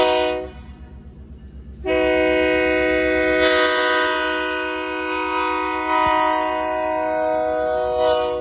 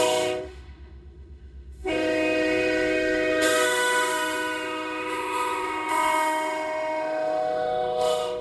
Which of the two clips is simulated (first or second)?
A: second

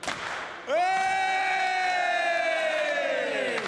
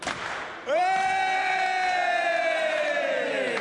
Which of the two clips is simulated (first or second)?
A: second